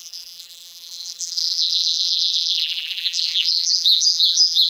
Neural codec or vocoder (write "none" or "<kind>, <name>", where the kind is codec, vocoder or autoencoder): vocoder, BigVGAN v2